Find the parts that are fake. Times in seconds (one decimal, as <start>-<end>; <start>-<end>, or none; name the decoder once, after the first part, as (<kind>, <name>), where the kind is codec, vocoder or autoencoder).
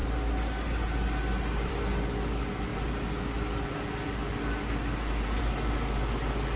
none